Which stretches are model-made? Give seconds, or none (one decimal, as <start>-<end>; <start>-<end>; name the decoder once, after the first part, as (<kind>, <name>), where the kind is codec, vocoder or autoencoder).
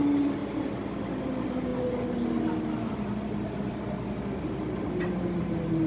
none